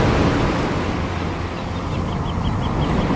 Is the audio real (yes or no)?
yes